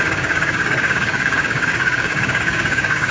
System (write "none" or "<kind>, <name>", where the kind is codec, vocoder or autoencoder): codec, DAC